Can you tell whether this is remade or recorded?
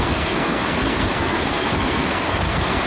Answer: remade